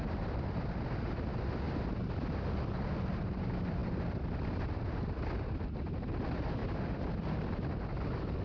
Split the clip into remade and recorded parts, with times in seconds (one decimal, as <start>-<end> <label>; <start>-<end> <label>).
0.0-8.4 recorded